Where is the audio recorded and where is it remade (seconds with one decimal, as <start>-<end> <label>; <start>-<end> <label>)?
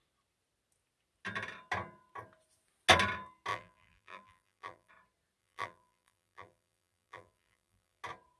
0.0-3.5 recorded; 3.5-4.9 remade; 4.9-5.4 recorded; 5.4-8.0 remade; 8.0-8.4 recorded